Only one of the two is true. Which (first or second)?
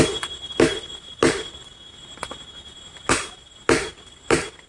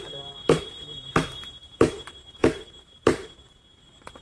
first